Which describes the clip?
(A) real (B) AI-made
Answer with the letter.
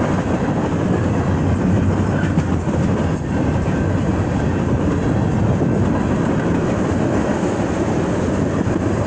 A